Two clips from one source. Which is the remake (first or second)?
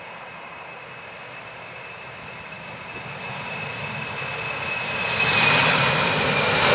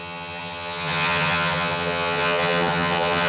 second